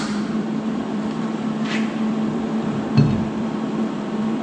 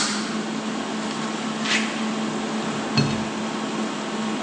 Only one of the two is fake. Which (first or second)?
first